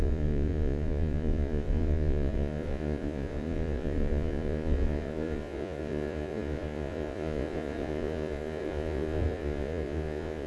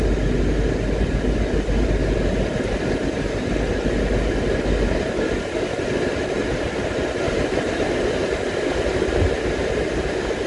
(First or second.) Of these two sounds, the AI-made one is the first